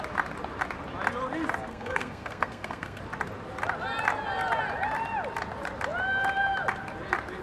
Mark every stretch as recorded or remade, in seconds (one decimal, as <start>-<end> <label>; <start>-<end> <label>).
0.0-1.7 recorded; 1.7-3.0 remade; 3.0-7.4 recorded